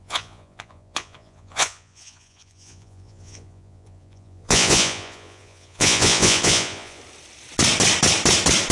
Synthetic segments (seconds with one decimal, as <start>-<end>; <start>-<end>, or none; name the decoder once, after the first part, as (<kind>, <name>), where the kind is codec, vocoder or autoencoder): 0.0-7.0 (vocoder, Vocos)